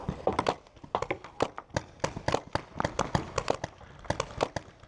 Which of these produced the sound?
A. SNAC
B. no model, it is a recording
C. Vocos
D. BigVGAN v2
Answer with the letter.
B